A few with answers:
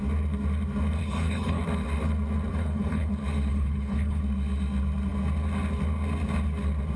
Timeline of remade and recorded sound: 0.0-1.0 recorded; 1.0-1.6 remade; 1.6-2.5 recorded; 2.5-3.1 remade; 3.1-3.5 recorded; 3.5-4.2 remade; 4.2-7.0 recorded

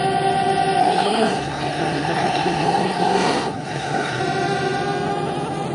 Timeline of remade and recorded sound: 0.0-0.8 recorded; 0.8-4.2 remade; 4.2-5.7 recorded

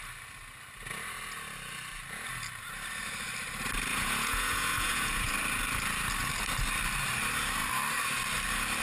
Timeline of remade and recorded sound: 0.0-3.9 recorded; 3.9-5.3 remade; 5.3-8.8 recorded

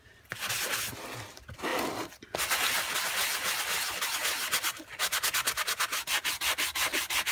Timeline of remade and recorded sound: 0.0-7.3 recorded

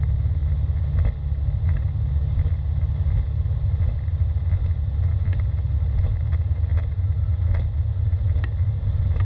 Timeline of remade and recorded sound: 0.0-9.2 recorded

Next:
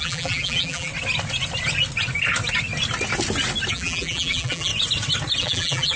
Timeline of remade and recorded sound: 0.0-0.9 remade; 0.9-3.7 recorded; 3.7-4.7 remade; 4.7-5.4 recorded; 5.4-6.0 remade

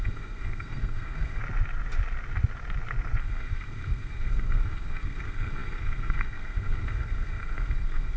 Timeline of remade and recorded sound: 0.0-1.4 remade; 1.4-3.2 recorded; 3.2-8.2 remade